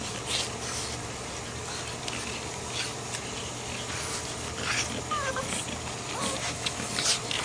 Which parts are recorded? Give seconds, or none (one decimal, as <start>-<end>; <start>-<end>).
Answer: 0.0-6.4; 6.9-7.4